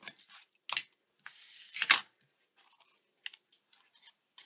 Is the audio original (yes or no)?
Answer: yes